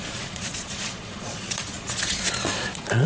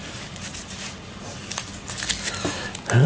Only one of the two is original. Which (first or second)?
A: second